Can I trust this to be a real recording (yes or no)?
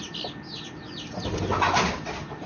yes